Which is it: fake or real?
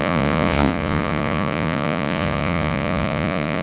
fake